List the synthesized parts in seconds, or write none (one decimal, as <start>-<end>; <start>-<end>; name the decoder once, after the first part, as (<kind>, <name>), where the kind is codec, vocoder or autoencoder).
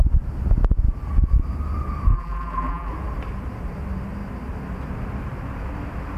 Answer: 2.1-2.9 (vocoder, BigVGAN v2)